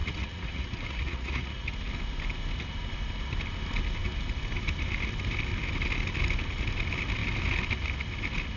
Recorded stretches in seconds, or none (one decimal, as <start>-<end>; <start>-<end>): 1.7-8.6